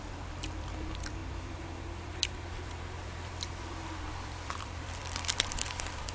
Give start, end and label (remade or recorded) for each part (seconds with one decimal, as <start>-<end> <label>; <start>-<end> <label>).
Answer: 0.0-6.1 remade